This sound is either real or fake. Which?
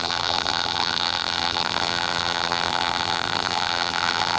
fake